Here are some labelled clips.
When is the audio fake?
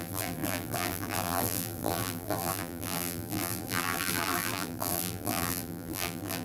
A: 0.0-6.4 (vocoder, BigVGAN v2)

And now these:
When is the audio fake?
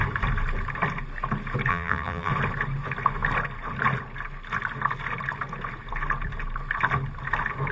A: 1.7-2.3 (vocoder, BigVGAN v2)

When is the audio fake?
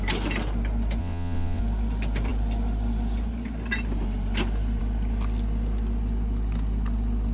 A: 1.0-1.6 (vocoder, WaveNeXt)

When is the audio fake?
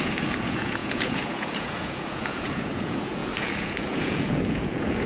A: 0.0-5.1 (vocoder, Vocos)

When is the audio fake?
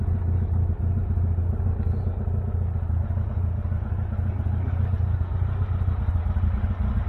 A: none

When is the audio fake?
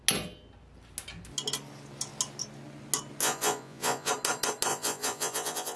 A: 3.2-4.1 (vocoder, Vocos); 4.7-5.8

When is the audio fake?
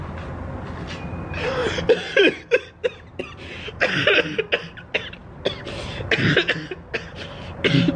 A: 1.6-4.4 (vocoder, BigVGAN v2)